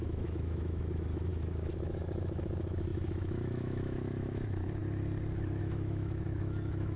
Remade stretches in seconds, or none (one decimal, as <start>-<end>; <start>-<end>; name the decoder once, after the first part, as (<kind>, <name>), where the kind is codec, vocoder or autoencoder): 0.0-4.8 (autoencoder, DAC-VAE); 5.6-7.0